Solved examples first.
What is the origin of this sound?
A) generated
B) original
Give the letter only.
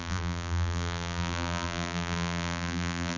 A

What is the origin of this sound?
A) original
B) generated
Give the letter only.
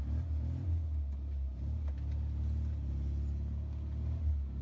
A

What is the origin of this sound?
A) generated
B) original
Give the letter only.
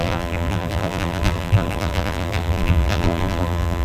A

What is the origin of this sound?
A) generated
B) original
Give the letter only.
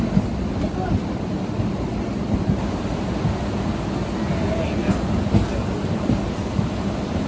B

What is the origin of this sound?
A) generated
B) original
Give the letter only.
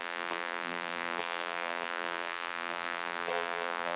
A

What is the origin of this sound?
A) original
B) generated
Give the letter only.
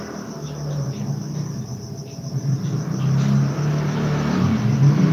A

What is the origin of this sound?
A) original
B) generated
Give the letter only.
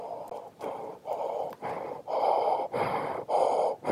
A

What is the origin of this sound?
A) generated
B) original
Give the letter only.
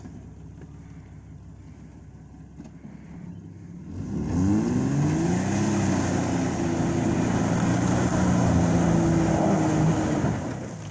B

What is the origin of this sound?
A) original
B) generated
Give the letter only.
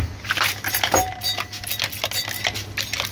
A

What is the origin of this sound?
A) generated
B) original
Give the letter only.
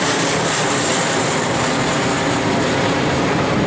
A